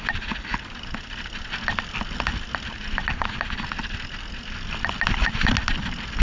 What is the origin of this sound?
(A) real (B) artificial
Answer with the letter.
A